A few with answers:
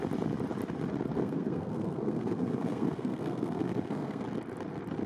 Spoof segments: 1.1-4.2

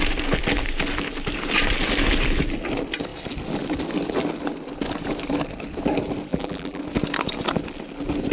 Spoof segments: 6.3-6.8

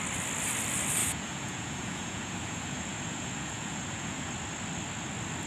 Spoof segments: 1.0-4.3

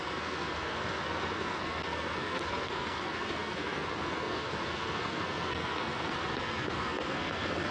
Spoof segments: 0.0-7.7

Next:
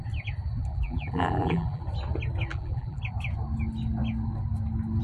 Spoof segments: 0.7-1.8; 2.5-3.0

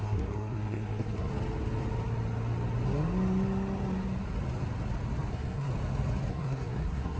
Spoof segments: 0.0-1.3; 5.3-5.7; 6.3-7.2

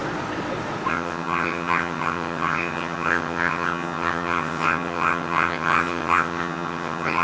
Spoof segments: 0.9-7.2

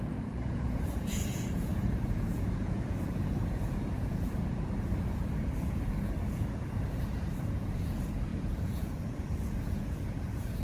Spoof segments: 0.0-10.6